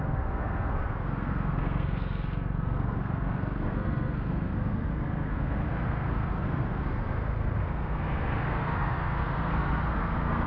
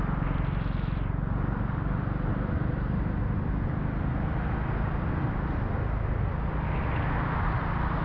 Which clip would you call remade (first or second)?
first